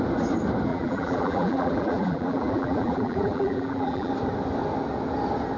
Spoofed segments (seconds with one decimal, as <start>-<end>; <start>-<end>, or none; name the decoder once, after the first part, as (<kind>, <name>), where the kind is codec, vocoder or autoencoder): 0.7-4.1 (vocoder, BigVGAN v2)